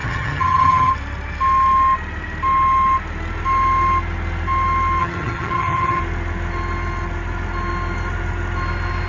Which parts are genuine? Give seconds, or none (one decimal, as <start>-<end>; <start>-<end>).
0.9-5.0; 6.0-9.1